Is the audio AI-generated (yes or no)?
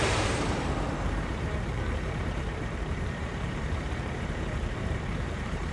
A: yes